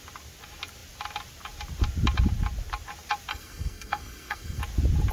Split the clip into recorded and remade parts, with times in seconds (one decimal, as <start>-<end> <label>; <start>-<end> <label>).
0.0-3.3 recorded; 3.3-4.6 remade; 4.6-5.1 recorded